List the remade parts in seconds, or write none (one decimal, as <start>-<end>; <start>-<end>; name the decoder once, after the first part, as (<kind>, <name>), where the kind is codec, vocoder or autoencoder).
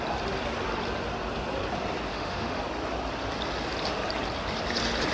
2.1-2.6 (autoencoder, DAC-VAE)